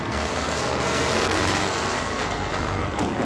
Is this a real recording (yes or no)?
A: no